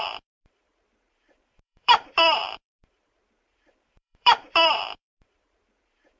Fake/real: fake